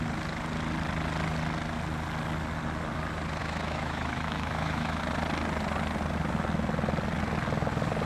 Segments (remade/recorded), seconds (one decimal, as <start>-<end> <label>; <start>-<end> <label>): 0.0-3.4 recorded; 3.4-5.0 remade; 5.0-8.1 recorded